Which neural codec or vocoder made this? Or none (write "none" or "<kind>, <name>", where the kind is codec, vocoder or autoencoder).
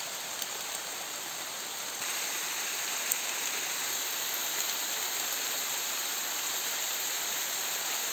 vocoder, BigVGAN v2